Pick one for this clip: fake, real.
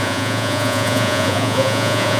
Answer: fake